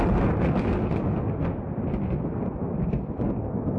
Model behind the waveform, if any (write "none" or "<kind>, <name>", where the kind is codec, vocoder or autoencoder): none